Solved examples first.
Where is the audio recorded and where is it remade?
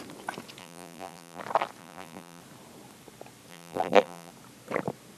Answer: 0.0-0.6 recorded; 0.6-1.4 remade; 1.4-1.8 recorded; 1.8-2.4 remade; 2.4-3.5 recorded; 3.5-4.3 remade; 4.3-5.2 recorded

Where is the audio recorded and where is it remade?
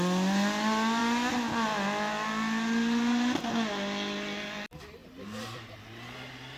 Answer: 0.0-5.0 recorded; 5.0-5.8 remade; 5.8-6.6 recorded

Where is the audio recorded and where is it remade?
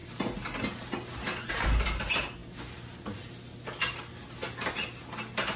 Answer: 0.0-5.6 recorded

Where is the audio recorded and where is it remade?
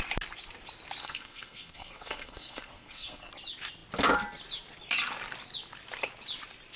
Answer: 0.0-1.0 recorded; 1.0-3.3 remade; 3.3-6.8 recorded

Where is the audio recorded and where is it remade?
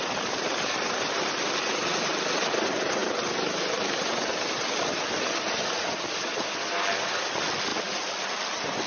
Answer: 0.0-8.9 recorded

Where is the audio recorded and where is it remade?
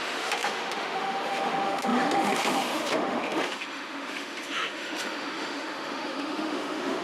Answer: 0.0-7.0 remade